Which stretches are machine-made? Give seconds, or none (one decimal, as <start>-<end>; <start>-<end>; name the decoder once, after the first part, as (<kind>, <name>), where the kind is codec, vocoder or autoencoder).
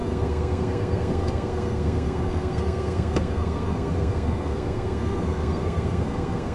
0.0-6.5 (codec, SNAC)